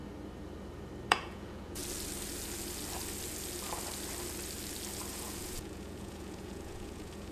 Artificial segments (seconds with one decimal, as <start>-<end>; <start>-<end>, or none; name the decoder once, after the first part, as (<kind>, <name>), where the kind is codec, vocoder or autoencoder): 1.1-1.8 (vocoder, Vocos); 5.1-7.3